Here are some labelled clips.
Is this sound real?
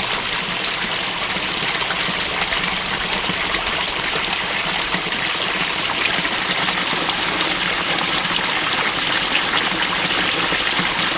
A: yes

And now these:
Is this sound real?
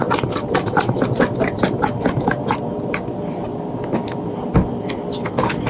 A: yes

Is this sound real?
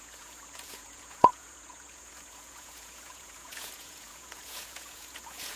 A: no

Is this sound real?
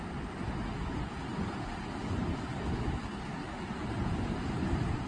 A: yes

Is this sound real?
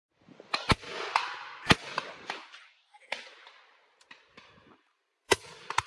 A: no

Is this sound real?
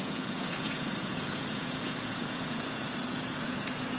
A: no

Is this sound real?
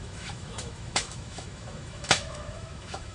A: no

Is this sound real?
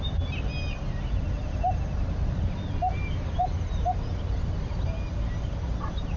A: yes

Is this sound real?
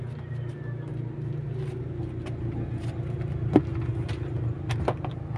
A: yes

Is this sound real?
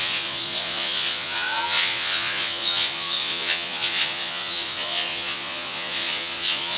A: no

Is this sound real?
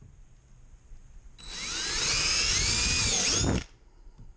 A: yes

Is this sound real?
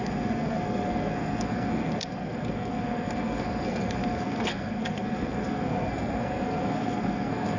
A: no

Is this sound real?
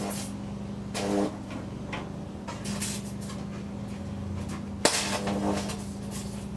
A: yes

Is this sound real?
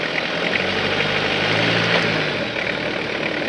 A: yes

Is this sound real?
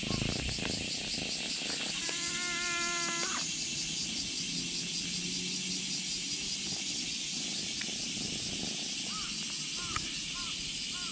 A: yes